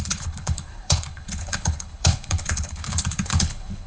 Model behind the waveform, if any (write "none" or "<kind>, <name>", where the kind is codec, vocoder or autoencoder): codec, HILCodec